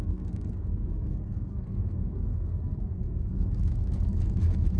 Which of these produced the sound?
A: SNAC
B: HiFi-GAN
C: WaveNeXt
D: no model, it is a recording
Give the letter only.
A